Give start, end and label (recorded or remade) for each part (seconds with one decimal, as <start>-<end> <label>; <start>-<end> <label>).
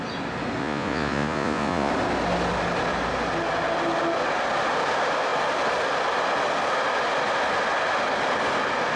0.0-0.6 recorded; 0.6-1.9 remade; 1.9-9.0 recorded